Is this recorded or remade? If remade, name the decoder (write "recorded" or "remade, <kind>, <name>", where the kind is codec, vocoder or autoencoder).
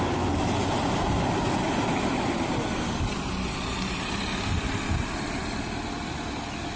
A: recorded